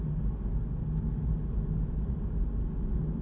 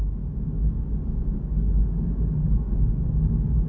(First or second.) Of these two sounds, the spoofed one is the second